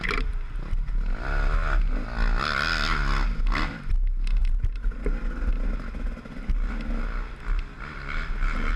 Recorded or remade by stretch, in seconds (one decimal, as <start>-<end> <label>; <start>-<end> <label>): 0.0-8.8 recorded